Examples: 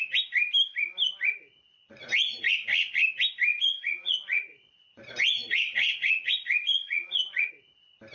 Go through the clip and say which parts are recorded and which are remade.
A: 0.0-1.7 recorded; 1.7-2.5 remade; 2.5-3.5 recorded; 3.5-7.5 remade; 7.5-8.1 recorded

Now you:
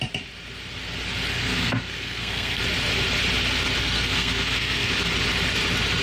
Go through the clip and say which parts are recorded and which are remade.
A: 0.0-1.3 recorded; 1.3-2.6 remade; 2.6-3.8 recorded; 3.8-4.9 remade; 4.9-6.0 recorded

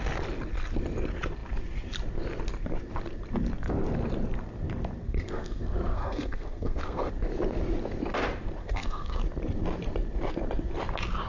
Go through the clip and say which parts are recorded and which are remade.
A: 0.0-5.0 recorded; 5.0-7.1 remade; 7.1-8.6 recorded; 8.6-9.2 remade; 9.2-11.3 recorded

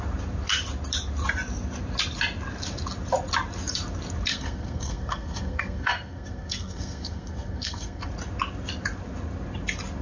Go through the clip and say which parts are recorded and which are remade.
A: 0.0-4.3 recorded; 4.3-8.1 remade; 8.1-10.0 recorded